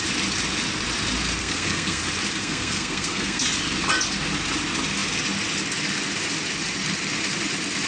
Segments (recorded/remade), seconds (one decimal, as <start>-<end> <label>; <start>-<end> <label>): 0.0-1.4 recorded; 1.4-2.0 remade; 2.0-2.4 recorded; 2.4-3.4 remade; 3.4-7.9 recorded